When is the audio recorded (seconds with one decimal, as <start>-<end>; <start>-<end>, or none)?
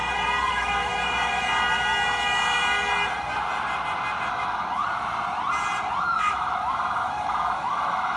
0.0-0.5; 0.9-4.3; 4.8-6.0